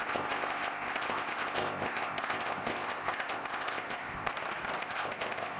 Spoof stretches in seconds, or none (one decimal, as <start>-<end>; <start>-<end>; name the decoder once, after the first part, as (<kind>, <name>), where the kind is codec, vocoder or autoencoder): 0.0-4.3 (codec, ZipCodec); 4.8-5.6